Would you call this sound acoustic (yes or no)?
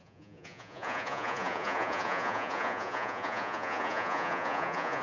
no